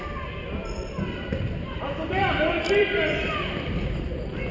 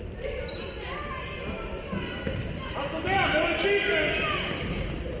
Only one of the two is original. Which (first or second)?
second